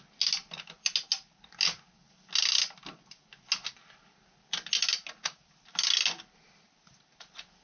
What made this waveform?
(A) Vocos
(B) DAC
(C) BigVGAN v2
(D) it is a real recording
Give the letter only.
D